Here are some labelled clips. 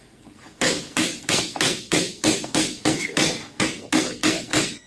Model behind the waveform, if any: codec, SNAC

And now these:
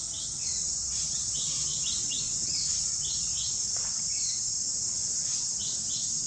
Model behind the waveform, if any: vocoder, WaveNeXt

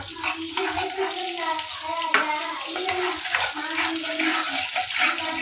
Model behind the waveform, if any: none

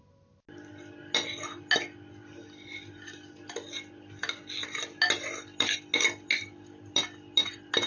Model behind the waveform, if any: none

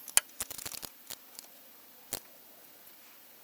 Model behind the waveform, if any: none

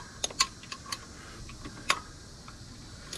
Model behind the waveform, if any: none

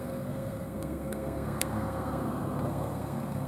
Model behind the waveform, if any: codec, SNAC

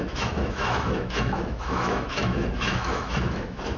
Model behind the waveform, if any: autoencoder, DAC-VAE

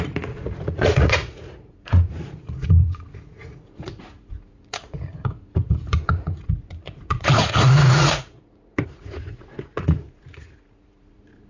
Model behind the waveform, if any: vocoder, Vocos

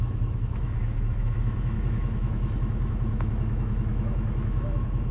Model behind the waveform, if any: autoencoder, DAC-VAE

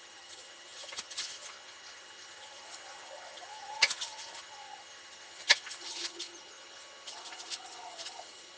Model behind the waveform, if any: vocoder, HiFi-GAN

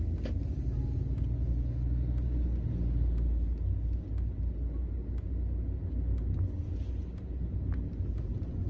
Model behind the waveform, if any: none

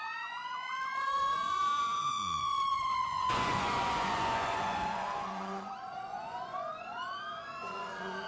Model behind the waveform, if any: vocoder, Vocos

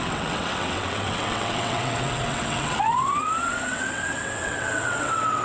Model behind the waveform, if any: vocoder, WaveNeXt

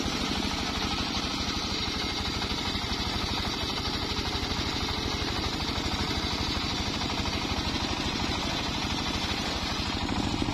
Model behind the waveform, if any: none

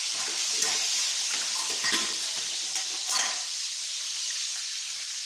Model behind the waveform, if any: none